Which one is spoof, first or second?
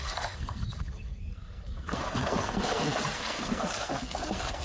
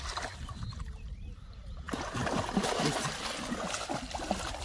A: first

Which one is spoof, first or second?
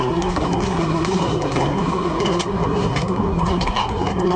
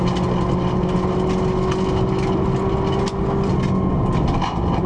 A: first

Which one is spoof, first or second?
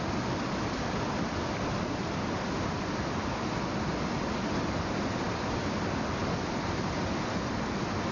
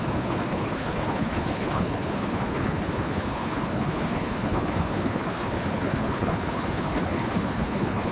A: second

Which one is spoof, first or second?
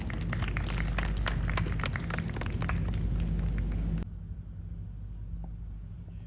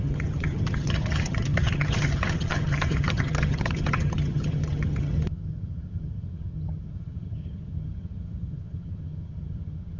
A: second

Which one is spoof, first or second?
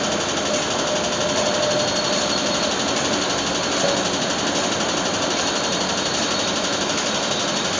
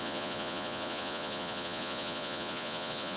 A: second